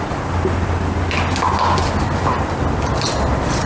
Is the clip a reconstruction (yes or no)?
no